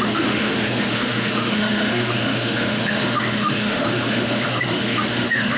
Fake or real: fake